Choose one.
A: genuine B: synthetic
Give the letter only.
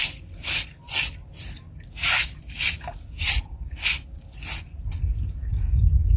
A